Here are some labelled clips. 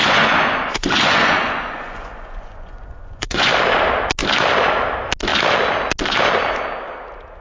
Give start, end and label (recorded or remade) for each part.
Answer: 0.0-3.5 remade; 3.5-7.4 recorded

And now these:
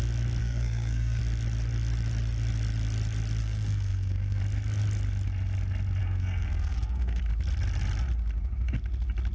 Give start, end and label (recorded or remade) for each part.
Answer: 0.0-0.4 recorded; 0.4-1.2 remade; 1.2-3.4 recorded; 3.4-4.4 remade; 4.4-6.0 recorded; 6.0-7.2 remade; 7.2-9.3 recorded